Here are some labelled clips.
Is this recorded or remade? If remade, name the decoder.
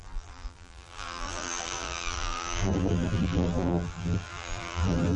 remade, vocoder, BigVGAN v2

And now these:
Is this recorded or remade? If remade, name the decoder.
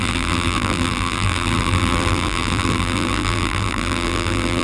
remade, vocoder, BigVGAN v2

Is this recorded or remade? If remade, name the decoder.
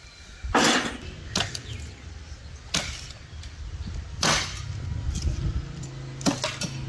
recorded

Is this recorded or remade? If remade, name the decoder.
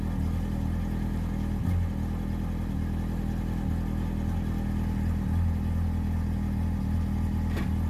recorded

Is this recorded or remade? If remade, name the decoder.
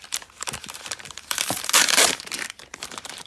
remade, vocoder, BigVGAN v2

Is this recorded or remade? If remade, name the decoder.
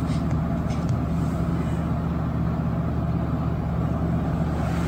recorded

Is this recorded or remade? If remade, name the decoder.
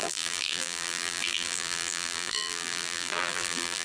remade, vocoder, BigVGAN v2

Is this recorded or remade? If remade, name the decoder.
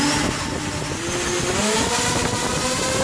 recorded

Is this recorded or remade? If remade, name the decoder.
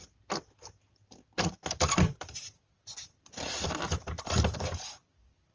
remade, vocoder, BigVGAN v2